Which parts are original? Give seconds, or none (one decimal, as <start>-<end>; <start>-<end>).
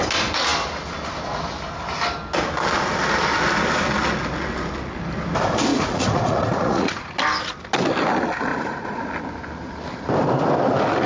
0.0-5.7; 7.1-8.5; 9.0-11.1